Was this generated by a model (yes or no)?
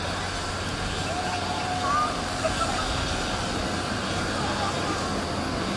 no